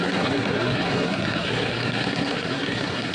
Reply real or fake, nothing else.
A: fake